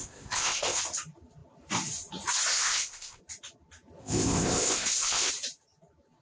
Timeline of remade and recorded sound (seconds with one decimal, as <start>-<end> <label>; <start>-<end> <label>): 0.0-0.8 remade; 0.8-2.5 recorded; 2.5-3.2 remade; 3.2-4.0 recorded; 4.0-5.3 remade; 5.3-6.2 recorded